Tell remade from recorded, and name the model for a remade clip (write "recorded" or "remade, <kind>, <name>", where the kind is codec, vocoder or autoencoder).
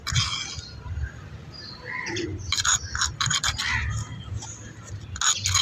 recorded